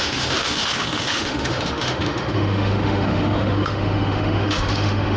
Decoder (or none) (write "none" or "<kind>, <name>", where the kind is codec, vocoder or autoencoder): autoencoder, DAC-VAE